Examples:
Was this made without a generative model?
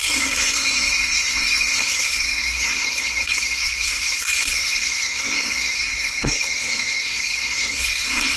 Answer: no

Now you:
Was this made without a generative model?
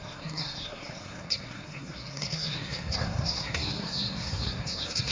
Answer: no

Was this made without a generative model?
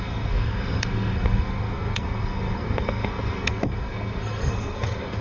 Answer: no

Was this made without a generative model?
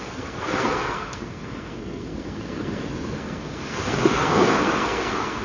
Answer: no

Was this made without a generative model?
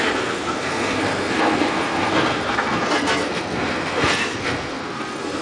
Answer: no